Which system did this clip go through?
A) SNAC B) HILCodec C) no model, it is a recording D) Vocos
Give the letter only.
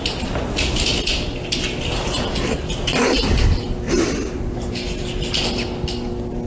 C